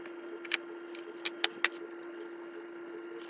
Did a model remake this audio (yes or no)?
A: no